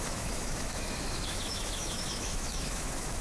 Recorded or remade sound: remade